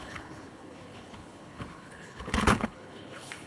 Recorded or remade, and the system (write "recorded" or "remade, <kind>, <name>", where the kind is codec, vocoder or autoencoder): remade, codec, HILCodec